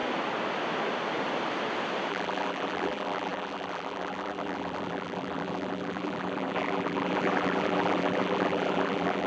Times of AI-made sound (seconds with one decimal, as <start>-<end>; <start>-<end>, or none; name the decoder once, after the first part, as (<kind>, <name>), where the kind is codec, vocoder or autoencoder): 2.1-9.3 (vocoder, BigVGAN v2)